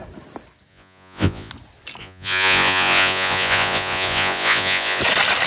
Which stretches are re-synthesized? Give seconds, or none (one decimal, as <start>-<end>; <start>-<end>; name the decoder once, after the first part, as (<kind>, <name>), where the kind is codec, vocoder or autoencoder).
0.7-1.5 (vocoder, Vocos); 2.0-5.0